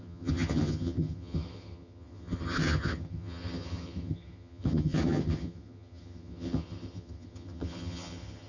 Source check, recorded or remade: remade